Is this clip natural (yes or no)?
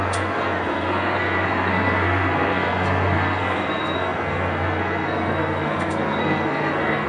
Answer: no